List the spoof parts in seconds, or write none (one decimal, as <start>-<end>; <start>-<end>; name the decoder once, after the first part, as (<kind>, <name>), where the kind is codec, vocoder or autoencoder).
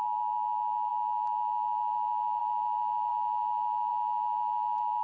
none